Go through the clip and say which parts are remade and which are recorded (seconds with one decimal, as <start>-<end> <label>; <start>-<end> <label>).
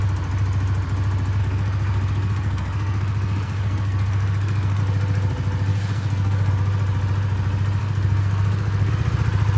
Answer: 0.0-1.4 recorded; 1.4-4.8 remade; 4.8-5.7 recorded; 5.7-6.5 remade; 6.5-7.8 recorded; 7.8-8.9 remade; 8.9-9.6 recorded